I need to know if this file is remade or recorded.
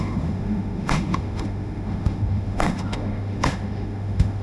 remade